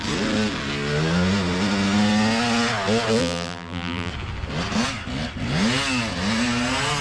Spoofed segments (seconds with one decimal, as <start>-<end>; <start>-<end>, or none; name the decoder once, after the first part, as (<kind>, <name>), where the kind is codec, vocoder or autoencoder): 3.2-4.1 (vocoder, BigVGAN v2)